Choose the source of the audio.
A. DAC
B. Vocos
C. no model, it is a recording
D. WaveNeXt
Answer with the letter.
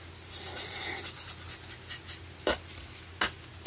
C